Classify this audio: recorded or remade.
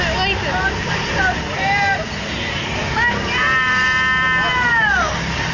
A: recorded